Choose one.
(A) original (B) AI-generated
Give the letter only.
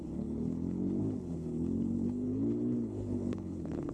B